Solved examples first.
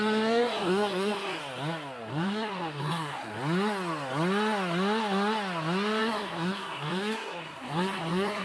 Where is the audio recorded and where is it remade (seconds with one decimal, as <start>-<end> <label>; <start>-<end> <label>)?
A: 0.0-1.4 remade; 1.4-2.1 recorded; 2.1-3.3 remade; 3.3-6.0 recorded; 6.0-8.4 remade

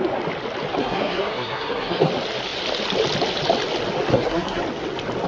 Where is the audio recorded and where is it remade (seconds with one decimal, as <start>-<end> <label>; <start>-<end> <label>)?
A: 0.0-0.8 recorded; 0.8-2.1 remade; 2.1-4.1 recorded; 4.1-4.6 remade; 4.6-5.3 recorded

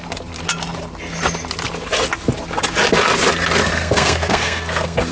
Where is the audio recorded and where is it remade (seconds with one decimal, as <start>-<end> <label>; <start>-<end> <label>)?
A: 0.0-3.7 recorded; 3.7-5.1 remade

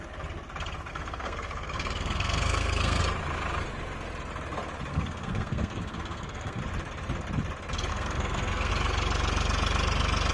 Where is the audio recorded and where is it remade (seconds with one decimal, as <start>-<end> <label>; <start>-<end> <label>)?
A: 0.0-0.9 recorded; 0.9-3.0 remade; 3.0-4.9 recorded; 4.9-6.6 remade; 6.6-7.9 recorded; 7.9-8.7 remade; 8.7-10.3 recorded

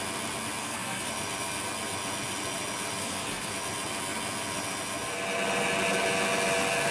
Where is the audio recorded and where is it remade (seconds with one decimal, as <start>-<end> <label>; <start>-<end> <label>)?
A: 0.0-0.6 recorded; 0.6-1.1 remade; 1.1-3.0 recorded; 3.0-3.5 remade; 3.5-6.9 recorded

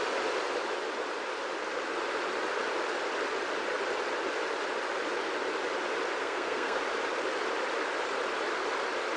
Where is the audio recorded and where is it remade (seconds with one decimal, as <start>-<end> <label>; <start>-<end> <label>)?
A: 0.0-6.2 recorded; 6.2-6.8 remade; 6.8-9.2 recorded

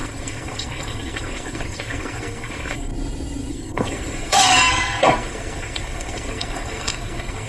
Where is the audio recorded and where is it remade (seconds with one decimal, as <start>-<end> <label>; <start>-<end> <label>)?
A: 0.0-2.9 remade; 2.9-3.5 recorded; 3.5-7.5 remade

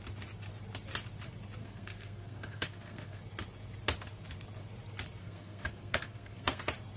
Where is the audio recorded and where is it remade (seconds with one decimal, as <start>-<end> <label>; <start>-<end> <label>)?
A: 0.0-1.6 recorded; 1.6-3.2 remade; 3.2-5.2 recorded; 5.2-6.6 remade; 6.6-7.0 recorded